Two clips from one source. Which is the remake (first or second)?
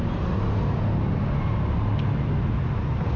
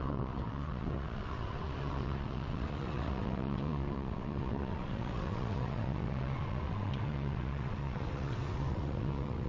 second